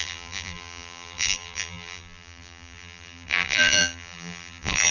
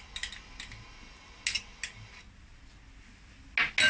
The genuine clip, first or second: second